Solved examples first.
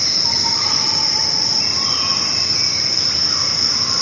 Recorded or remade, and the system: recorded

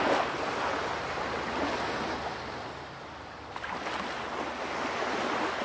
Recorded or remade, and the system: recorded